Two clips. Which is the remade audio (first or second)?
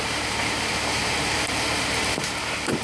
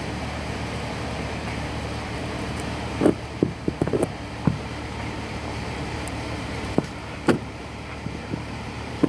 second